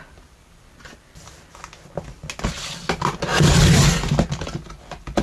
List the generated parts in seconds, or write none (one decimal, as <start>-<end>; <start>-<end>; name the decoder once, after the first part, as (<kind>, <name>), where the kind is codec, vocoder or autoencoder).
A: 3.3-3.8 (vocoder, BigVGAN v2)